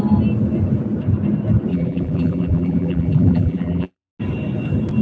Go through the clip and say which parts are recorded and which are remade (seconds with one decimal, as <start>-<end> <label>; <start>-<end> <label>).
0.0-1.7 recorded; 1.7-4.1 remade; 4.1-5.0 recorded